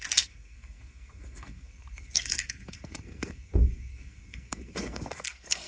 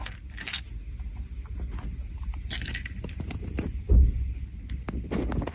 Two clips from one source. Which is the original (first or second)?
second